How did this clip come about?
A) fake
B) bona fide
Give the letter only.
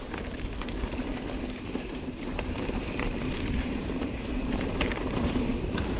A